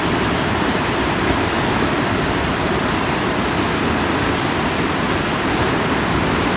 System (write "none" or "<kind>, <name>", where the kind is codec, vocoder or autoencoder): vocoder, BigVGAN v2